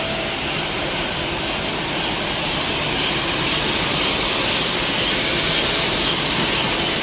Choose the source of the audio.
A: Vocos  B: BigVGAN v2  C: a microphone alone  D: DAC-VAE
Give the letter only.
C